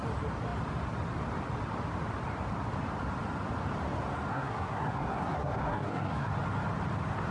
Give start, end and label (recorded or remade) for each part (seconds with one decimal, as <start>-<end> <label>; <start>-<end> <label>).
0.0-4.3 recorded; 4.3-6.3 remade; 6.3-7.3 recorded